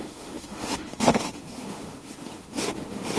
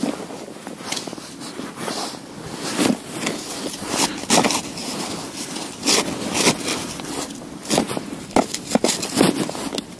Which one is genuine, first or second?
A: second